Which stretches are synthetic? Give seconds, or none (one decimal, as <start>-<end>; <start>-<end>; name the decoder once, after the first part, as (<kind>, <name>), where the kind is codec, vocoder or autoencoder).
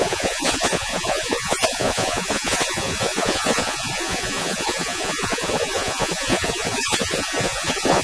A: 0.0-8.0 (vocoder, Vocos)